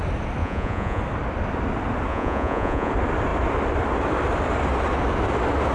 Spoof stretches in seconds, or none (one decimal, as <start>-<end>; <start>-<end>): 0.4-1.0; 2.1-2.9